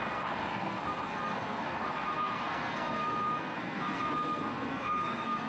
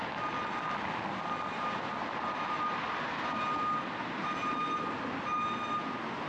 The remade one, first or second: first